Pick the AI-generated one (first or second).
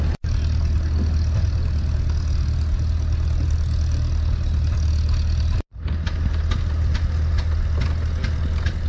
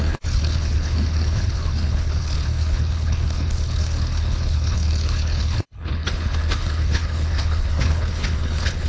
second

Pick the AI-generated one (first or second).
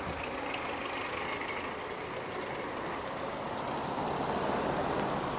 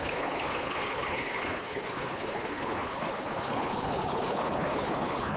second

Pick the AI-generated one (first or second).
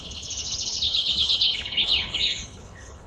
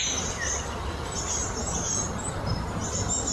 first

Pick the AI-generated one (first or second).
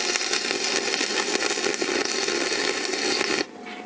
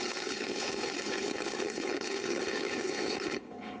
second